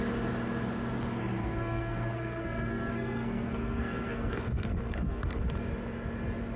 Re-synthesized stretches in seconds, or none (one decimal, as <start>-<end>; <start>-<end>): 1.4-5.4